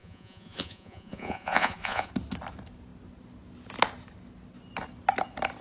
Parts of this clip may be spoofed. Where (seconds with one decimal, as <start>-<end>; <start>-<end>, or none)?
0.0-2.1